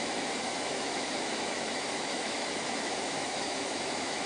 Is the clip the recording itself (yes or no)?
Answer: no